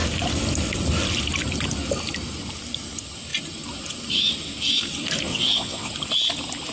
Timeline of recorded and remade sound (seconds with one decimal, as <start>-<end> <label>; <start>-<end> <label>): 0.0-5.3 recorded; 5.3-5.9 remade; 5.9-6.7 recorded